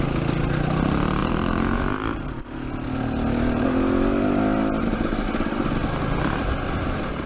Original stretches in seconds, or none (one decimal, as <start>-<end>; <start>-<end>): 0.0-7.3